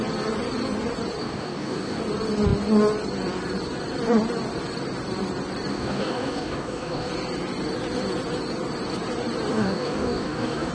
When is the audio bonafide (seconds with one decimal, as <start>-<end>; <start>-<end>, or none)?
0.0-1.2; 2.0-5.7; 7.1-9.5